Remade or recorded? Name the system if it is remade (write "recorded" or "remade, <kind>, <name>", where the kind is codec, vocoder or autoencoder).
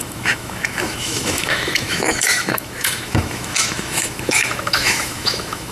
remade, autoencoder, DAC-VAE